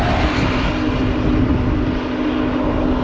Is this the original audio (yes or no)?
yes